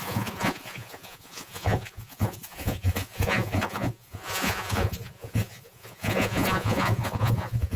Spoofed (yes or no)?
yes